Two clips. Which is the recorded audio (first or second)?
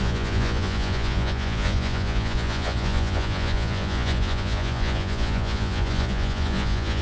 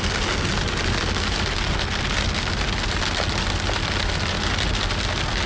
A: second